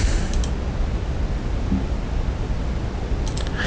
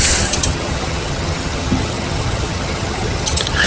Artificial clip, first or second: second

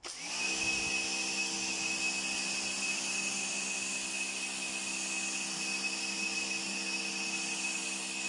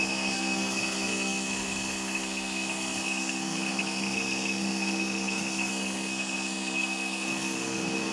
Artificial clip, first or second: second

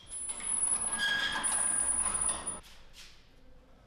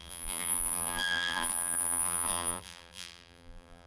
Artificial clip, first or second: second